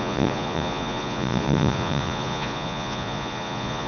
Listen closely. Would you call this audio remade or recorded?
remade